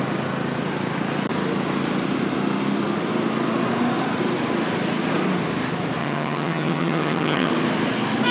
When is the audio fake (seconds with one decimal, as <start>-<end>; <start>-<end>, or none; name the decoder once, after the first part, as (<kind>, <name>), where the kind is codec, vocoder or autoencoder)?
6.0-7.5 (vocoder, HiFi-GAN)